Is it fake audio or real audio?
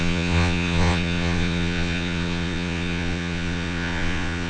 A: fake